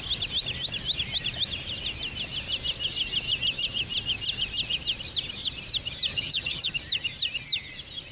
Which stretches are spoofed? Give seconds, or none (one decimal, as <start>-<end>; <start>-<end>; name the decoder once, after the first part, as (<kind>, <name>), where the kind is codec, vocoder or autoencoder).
6.1-6.7 (vocoder, HiFi-GAN)